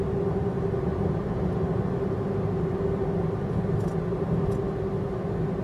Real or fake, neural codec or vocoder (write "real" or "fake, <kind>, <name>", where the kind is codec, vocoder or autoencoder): real